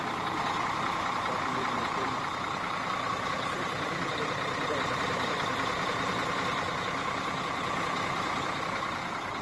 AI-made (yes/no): yes